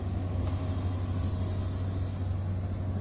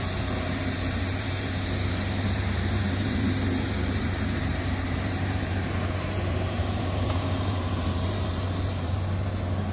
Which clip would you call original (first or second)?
first